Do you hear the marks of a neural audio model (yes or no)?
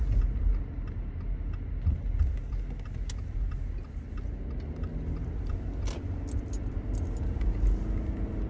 no